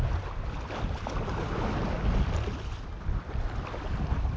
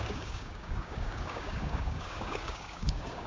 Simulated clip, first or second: second